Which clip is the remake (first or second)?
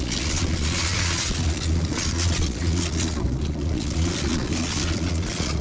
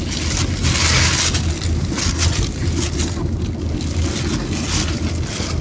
first